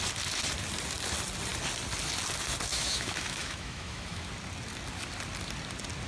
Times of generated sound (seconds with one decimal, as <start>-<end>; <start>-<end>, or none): 2.7-4.3